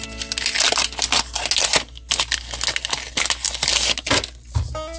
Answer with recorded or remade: recorded